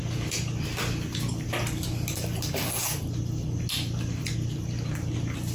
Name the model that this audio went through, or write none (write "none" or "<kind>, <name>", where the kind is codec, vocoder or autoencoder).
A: none